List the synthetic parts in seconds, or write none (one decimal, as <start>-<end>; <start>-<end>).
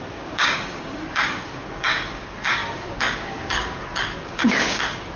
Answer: 0.0-5.2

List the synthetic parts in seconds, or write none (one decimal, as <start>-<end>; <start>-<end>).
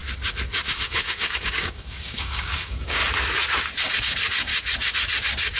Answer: 0.7-3.0; 3.9-4.5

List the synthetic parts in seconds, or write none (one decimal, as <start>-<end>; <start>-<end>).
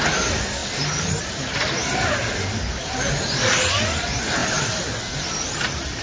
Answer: none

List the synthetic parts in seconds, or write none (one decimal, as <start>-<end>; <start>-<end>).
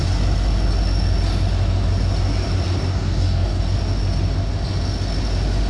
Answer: 2.9-3.6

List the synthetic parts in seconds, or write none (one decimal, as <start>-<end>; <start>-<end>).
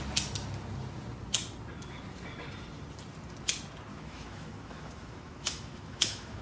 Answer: 3.9-6.4